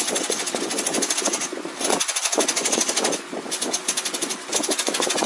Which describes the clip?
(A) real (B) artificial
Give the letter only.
B